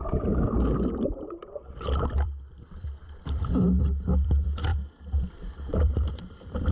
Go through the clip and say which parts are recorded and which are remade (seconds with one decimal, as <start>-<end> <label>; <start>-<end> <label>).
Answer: 0.0-6.7 remade